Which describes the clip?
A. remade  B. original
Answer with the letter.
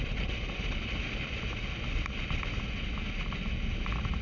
B